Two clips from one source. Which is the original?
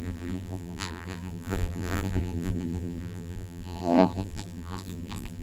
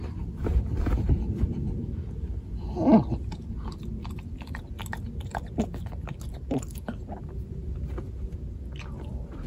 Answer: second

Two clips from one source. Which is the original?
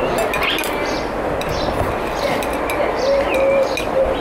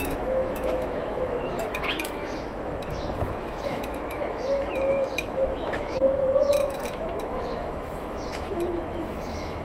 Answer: first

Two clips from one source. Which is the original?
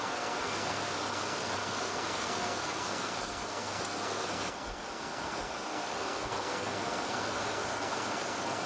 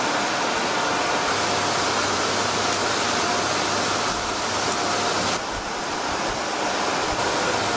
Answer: second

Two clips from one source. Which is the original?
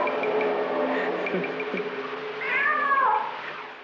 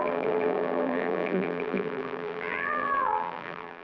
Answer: first